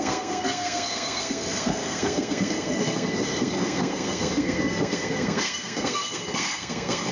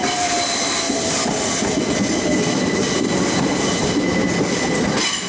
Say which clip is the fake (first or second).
first